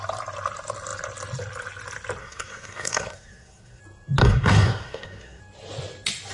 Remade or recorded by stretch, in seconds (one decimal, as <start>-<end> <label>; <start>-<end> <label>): 0.0-2.2 recorded; 2.2-3.8 remade; 3.8-4.2 recorded; 4.2-5.4 remade; 5.4-6.3 recorded